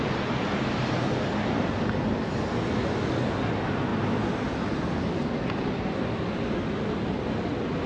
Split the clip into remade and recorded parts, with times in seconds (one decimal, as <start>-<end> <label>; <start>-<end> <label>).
0.0-7.9 recorded